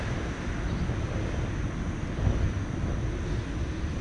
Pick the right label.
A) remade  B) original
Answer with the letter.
B